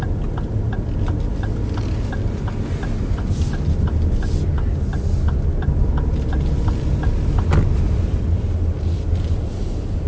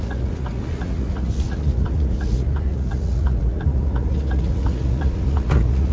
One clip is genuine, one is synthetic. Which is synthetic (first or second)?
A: second